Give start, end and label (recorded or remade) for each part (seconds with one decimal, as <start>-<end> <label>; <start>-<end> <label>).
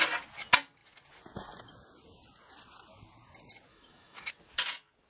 0.0-3.7 recorded; 3.7-4.3 remade; 4.3-5.1 recorded